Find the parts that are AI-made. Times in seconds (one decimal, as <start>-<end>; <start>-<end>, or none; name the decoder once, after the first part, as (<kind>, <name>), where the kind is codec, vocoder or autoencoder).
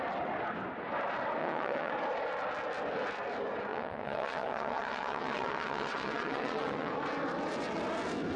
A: 1.4-1.9 (vocoder, WaveNeXt); 3.7-6.9